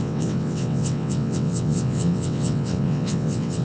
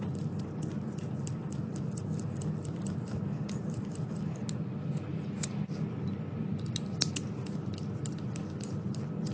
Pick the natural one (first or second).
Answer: second